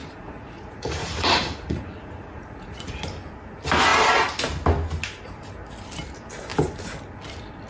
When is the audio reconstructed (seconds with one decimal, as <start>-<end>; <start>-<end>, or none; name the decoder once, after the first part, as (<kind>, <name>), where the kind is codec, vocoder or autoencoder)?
0.0-3.0 (vocoder, Vocos)